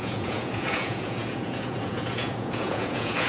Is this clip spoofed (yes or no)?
yes